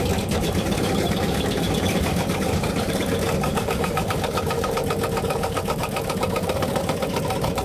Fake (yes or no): yes